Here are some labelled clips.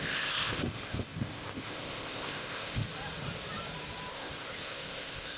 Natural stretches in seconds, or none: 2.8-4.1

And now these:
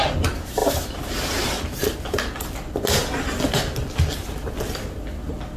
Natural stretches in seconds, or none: 0.0-0.6; 1.1-5.6